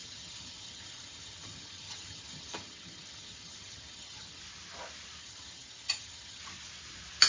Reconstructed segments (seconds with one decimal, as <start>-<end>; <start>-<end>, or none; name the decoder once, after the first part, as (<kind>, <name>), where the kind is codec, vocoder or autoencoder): 0.0-4.4 (vocoder, HiFi-GAN); 5.2-6.4